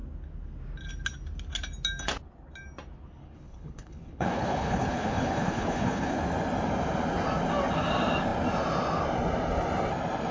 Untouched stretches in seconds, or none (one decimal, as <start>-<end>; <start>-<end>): 0.0-3.2; 6.2-10.3